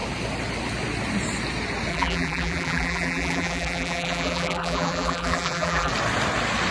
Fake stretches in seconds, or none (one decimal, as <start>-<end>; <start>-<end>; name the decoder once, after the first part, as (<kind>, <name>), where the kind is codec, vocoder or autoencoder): 1.9-5.9 (vocoder, BigVGAN v2)